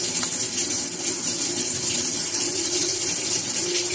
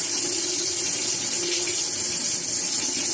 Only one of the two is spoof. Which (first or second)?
first